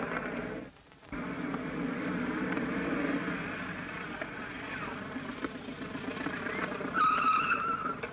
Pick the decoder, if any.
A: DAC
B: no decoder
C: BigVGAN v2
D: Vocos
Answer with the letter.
B